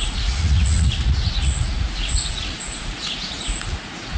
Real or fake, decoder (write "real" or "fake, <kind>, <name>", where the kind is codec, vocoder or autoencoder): fake, vocoder, Vocos